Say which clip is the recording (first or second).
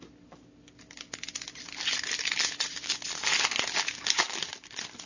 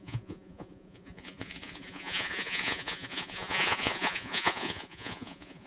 first